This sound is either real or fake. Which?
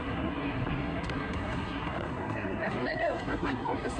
fake